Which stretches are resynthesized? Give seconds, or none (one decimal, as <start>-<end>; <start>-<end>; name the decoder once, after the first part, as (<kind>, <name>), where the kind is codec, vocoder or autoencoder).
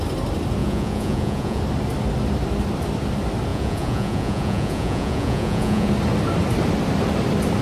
0.6-1.6 (vocoder, Vocos); 3.5-5.9